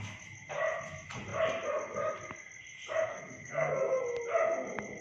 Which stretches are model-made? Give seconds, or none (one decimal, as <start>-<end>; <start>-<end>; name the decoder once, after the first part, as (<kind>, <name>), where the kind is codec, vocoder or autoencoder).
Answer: 3.1-4.0 (codec, SNAC)